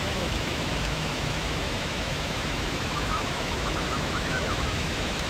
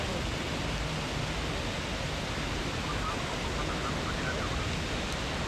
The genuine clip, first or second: second